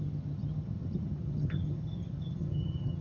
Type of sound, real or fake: fake